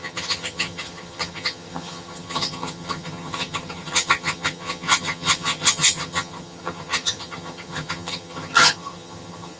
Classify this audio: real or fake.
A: fake